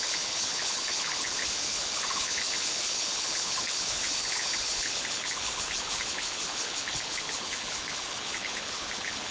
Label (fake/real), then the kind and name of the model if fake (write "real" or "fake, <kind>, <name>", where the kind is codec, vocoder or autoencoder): fake, codec, HILCodec